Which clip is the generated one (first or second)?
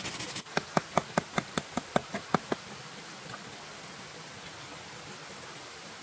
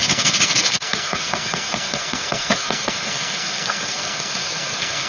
second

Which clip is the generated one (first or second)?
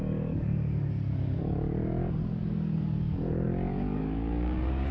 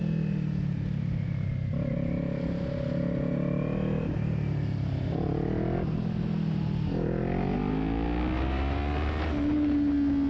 first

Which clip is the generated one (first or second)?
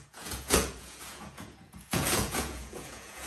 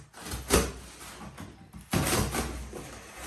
first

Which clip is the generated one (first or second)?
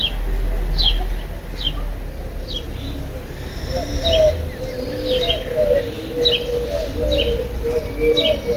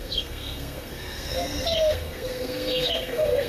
second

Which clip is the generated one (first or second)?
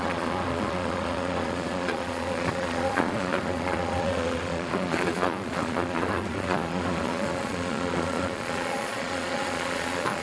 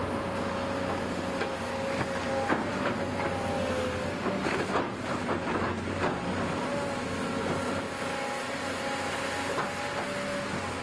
first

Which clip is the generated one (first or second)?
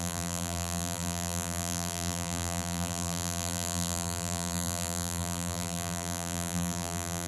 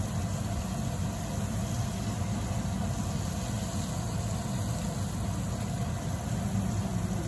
first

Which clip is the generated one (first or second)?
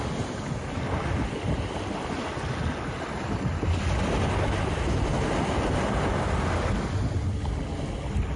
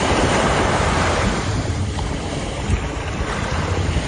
second